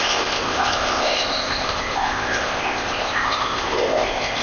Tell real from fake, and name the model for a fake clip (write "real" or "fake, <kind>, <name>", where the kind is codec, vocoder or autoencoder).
fake, codec, ZipCodec